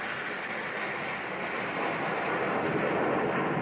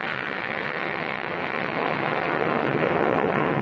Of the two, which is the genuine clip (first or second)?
first